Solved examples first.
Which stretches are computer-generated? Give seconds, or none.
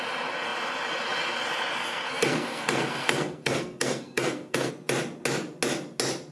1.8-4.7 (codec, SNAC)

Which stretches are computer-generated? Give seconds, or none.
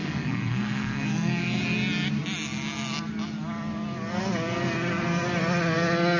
0.0-1.6 (codec, SNAC)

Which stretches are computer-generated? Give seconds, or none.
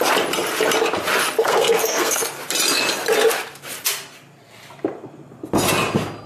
1.4-2.2 (codec, SNAC)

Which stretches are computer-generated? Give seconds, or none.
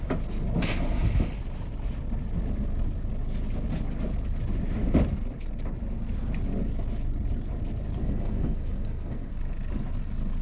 8.0-9.3 (codec, SNAC)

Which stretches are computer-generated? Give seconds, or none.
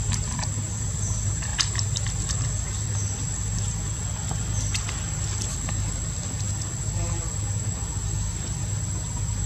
none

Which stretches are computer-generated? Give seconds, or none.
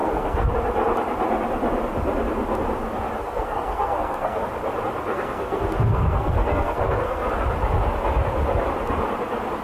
0.0-0.5 (codec, SNAC); 3.2-4.4; 5.1-7.3